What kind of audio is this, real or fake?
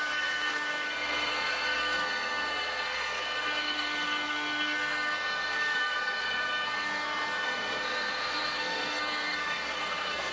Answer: fake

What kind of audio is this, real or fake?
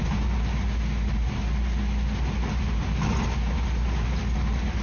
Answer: real